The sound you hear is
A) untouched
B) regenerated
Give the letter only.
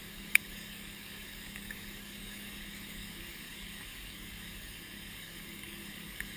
B